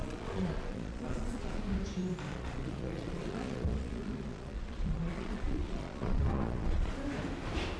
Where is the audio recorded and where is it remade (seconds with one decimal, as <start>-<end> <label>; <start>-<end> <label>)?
0.0-1.6 remade; 1.6-2.3 recorded; 2.3-6.9 remade; 6.9-7.8 recorded